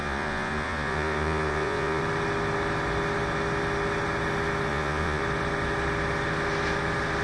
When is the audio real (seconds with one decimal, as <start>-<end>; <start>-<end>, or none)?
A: 2.0-4.7; 5.2-7.2